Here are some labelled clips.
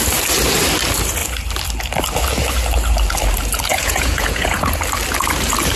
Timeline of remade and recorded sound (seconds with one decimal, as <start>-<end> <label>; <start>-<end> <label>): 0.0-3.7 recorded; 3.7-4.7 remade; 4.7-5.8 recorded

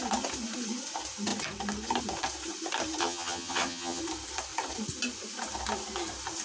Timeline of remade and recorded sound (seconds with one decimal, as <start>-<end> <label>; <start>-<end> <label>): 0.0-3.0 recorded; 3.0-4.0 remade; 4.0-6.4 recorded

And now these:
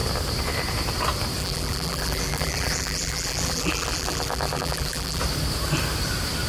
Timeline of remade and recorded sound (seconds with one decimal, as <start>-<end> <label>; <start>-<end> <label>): 0.0-1.4 recorded; 1.4-5.2 remade; 5.2-6.5 recorded

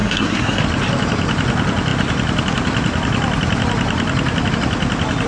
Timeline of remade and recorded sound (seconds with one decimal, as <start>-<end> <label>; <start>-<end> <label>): 0.0-0.6 remade; 0.6-5.3 recorded

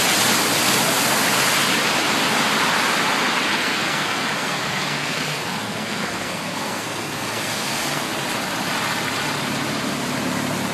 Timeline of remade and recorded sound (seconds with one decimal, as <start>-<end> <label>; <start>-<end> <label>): 0.0-3.5 recorded; 3.5-8.1 remade; 8.1-10.7 recorded